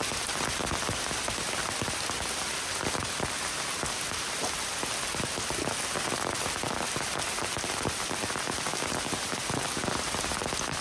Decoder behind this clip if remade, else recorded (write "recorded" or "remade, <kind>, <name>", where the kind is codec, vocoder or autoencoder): recorded